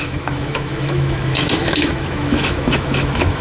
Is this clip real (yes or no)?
no